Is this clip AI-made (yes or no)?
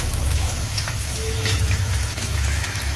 yes